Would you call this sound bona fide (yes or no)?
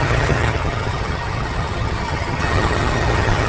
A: no